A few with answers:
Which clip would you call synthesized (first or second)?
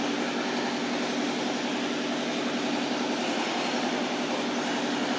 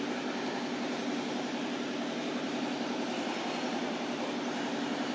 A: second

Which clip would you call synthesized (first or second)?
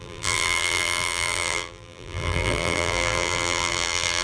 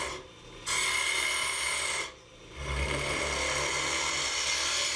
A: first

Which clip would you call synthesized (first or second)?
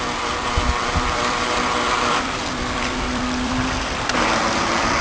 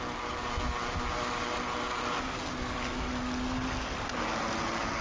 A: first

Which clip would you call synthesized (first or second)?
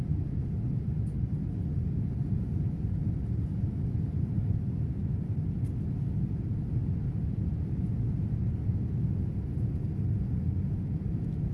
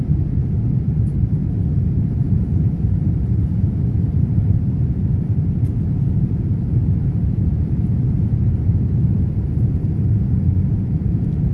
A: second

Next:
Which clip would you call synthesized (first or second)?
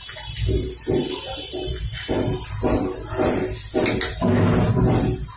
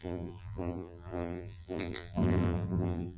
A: second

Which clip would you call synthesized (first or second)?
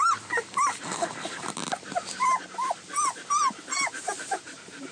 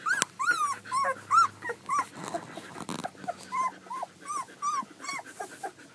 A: first